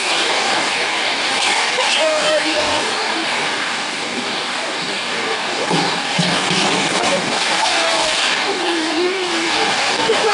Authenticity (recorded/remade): remade